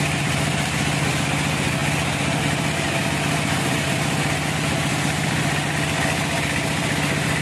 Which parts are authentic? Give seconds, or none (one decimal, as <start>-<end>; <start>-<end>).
0.0-7.4